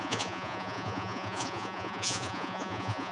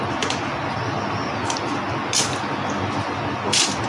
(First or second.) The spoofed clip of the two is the first